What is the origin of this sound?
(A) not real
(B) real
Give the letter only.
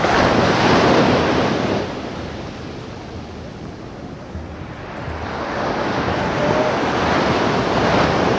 B